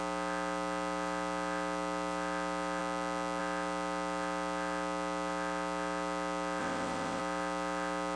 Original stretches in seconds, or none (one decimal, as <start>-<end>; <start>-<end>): 0.0-6.6; 7.2-8.2